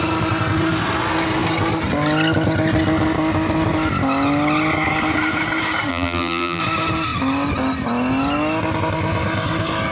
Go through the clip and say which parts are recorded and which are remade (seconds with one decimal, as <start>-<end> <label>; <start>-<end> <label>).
0.0-5.9 recorded; 5.9-6.6 remade; 6.6-9.9 recorded